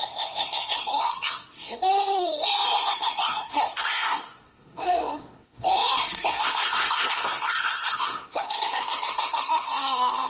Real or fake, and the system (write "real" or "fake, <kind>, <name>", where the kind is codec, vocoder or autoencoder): fake, codec, SNAC